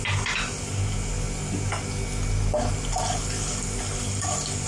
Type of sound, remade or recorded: recorded